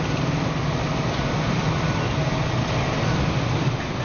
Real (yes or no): yes